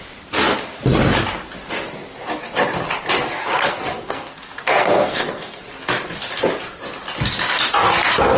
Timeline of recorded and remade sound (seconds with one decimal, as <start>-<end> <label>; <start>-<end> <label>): 0.0-3.4 recorded; 3.4-5.6 remade; 5.6-8.4 recorded